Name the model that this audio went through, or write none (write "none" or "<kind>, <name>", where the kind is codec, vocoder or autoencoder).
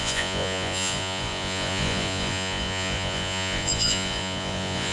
vocoder, Vocos